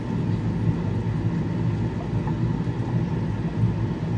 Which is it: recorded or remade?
recorded